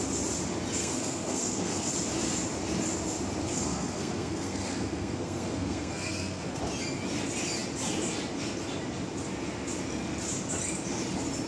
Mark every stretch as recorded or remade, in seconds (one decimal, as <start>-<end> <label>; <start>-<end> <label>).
0.0-0.8 recorded; 0.8-1.9 remade; 1.9-3.5 recorded; 3.5-6.6 remade; 6.6-11.5 recorded

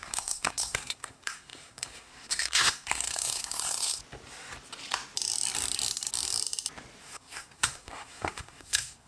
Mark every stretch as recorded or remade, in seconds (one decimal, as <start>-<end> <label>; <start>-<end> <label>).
0.0-4.0 remade; 4.0-7.0 recorded; 7.0-9.1 remade

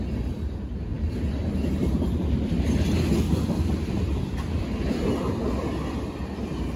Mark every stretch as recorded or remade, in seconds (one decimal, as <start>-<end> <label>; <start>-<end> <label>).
0.0-0.9 recorded; 0.9-2.6 remade; 2.6-6.8 recorded

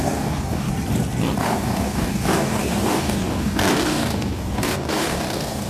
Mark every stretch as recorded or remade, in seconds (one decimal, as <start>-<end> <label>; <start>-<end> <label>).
0.0-0.7 remade; 0.7-1.4 recorded; 1.4-5.7 remade

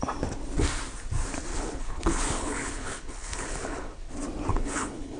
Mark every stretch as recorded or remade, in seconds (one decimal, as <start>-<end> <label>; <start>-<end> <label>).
0.0-1.5 recorded; 1.5-4.1 remade; 4.1-4.5 recorded; 4.5-5.2 remade

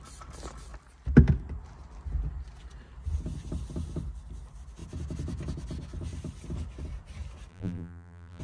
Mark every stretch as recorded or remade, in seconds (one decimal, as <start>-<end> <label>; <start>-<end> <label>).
0.0-7.5 recorded; 7.5-8.4 remade

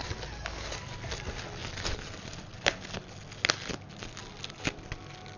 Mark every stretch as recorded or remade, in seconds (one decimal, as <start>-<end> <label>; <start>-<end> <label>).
0.0-1.6 recorded; 1.6-2.8 remade; 2.8-5.4 recorded